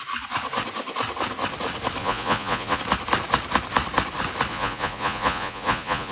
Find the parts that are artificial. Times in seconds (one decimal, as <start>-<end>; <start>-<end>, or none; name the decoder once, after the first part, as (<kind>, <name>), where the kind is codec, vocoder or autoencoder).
2.0-2.8 (vocoder, Vocos); 4.5-6.1